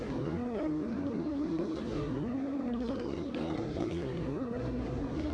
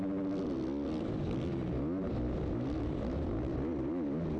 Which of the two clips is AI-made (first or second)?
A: first